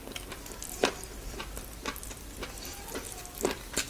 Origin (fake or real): real